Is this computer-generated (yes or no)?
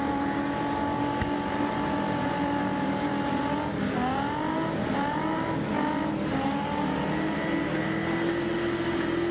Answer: no